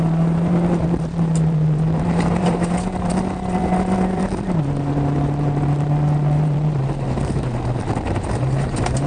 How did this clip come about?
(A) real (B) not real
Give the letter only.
B